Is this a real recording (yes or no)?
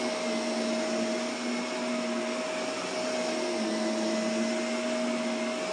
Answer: yes